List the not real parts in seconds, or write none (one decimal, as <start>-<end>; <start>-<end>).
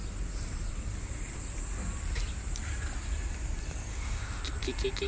3.9-4.4